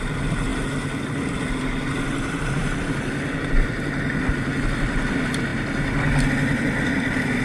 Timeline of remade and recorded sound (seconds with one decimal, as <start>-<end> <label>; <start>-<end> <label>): 0.0-7.4 recorded